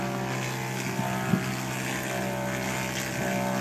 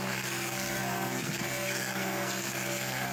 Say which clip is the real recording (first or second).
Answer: first